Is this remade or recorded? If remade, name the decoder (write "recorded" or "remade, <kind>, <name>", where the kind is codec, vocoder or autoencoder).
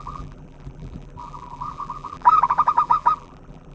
remade, vocoder, BigVGAN v2